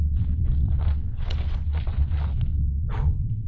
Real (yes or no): no